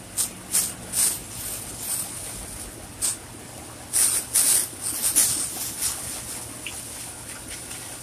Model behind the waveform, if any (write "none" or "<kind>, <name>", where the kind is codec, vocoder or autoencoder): none